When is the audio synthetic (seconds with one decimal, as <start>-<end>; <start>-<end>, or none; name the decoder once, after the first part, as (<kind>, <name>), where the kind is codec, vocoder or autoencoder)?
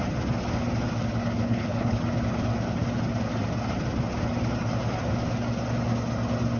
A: 1.4-2.0 (codec, HILCodec)